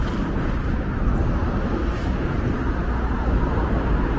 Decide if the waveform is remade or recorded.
recorded